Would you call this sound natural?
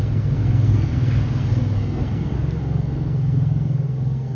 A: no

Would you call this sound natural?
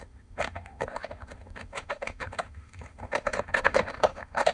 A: no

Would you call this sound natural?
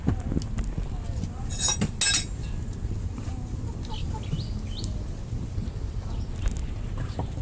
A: yes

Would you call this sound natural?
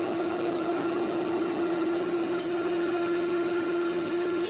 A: no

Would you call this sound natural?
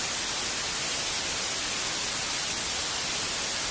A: yes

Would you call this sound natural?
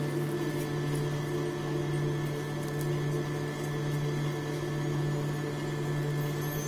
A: yes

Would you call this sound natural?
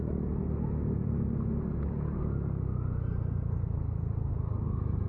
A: yes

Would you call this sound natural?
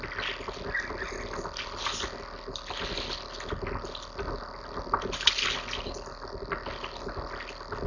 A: yes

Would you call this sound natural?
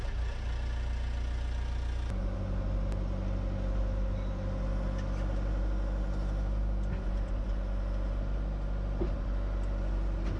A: yes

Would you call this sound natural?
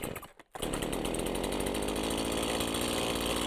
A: yes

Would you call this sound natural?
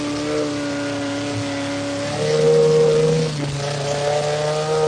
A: yes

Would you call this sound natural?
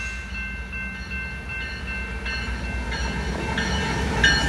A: yes